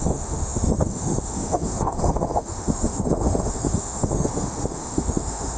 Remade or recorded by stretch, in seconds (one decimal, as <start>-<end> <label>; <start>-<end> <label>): 0.0-5.6 remade